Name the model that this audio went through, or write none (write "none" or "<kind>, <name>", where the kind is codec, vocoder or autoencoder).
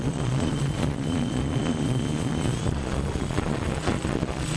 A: vocoder, Vocos